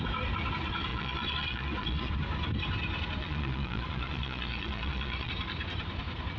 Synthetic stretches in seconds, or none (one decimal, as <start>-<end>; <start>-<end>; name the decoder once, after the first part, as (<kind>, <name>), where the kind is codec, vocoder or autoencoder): 0.9-2.1 (vocoder, Vocos); 3.2-5.3